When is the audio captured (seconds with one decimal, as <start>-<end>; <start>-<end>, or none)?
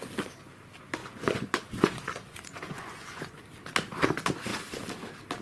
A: 0.0-1.0; 3.4-5.4